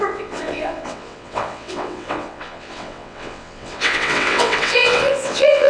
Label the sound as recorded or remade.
remade